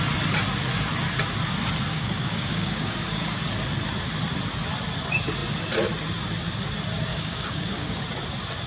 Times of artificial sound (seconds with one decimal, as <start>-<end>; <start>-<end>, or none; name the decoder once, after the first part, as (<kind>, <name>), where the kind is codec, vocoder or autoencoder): 1.9-3.4 (codec, DAC); 7.1-8.0